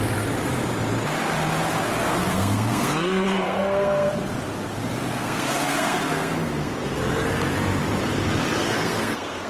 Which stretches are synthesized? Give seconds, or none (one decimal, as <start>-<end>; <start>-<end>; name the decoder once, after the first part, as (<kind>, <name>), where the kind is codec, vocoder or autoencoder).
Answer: 2.1-4.1 (codec, SNAC); 5.1-6.9; 8.6-9.5